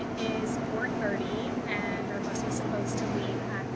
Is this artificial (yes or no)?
no